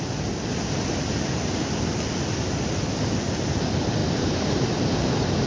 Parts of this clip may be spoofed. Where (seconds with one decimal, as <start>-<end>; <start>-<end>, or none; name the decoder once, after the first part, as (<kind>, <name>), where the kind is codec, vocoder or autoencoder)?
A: 4.0-4.7 (vocoder, BigVGAN v2)